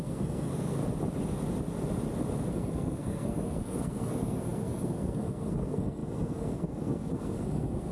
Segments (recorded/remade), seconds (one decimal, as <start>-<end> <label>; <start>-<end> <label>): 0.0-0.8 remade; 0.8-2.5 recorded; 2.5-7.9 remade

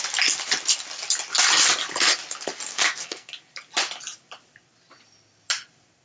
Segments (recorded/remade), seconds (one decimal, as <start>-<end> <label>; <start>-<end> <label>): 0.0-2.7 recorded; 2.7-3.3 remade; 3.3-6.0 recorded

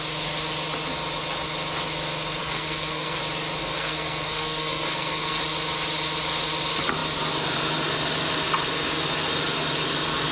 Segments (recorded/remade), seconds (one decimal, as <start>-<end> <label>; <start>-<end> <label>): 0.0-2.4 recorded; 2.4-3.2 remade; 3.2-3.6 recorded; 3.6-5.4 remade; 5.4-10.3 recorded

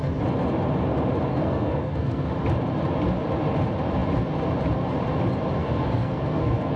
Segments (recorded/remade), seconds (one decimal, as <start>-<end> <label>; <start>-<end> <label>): 0.0-1.3 recorded; 1.3-2.3 remade; 2.3-5.6 recorded; 5.6-6.8 remade

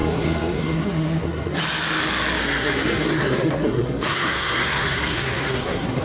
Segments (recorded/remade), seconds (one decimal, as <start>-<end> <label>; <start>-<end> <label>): 0.0-1.6 remade; 1.6-2.4 recorded; 2.4-6.0 remade